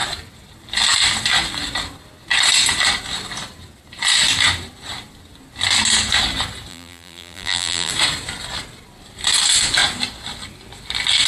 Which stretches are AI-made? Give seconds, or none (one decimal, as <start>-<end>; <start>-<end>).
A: 6.7-7.9